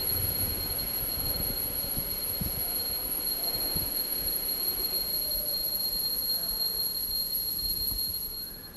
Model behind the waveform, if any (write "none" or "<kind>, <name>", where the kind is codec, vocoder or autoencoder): vocoder, Vocos